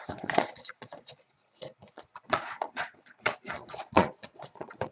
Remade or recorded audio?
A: remade